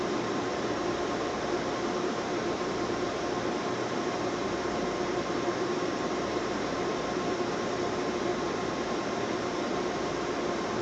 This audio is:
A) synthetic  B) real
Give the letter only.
A